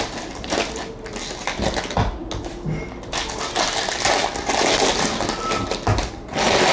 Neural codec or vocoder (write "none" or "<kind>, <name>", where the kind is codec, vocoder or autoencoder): none